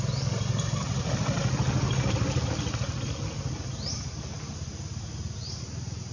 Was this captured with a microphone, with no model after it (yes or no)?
yes